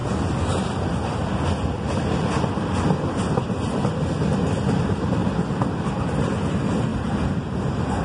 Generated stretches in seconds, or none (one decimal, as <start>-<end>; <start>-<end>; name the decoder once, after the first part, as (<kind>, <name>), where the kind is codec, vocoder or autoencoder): none